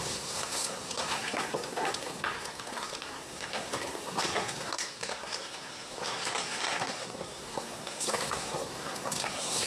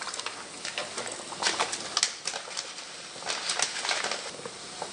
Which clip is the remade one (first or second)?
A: first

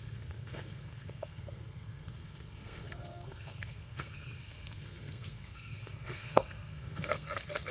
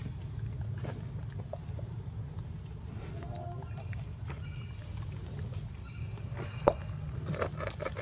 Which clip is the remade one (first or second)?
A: first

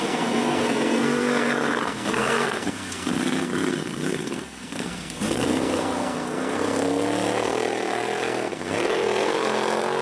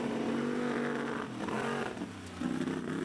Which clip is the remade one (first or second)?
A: first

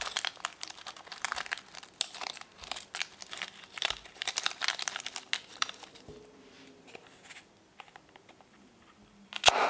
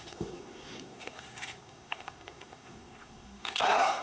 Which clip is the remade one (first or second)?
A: second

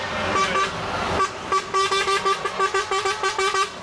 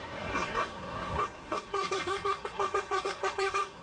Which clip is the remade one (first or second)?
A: second